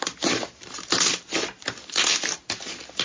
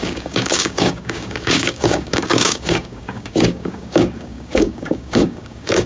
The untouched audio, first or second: first